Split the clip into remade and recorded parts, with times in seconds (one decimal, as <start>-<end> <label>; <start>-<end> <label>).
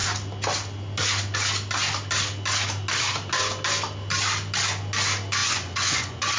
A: 0.0-5.4 recorded; 5.4-6.4 remade